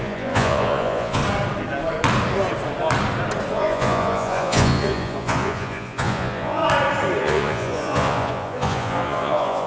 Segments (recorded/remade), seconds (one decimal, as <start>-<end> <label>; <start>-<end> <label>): 0.0-1.2 remade; 1.2-3.5 recorded; 3.5-6.6 remade; 6.6-7.2 recorded; 7.2-9.7 remade